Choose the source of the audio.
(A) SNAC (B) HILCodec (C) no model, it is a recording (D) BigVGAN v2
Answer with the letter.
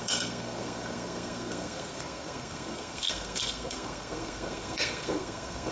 A